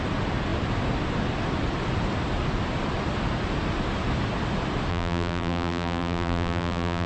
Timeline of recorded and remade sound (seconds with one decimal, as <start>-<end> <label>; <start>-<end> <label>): 0.0-4.9 recorded; 4.9-7.1 remade